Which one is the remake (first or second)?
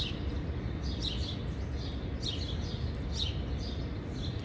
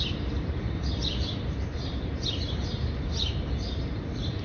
second